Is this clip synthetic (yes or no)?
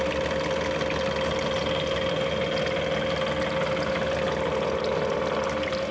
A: no